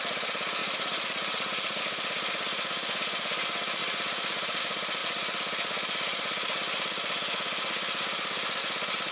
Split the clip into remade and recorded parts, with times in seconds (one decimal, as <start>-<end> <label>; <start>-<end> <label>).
0.0-0.6 recorded; 0.6-1.8 remade; 1.8-9.1 recorded